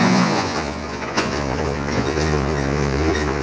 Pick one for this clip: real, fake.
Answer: fake